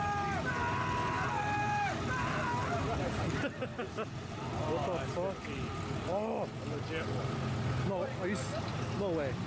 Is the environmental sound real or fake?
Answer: real